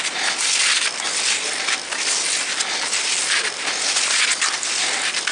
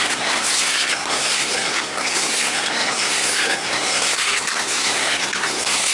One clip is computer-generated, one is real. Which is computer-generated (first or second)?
second